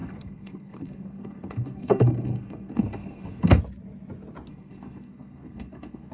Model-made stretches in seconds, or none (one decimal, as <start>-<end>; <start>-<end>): 0.0-3.6; 4.5-6.1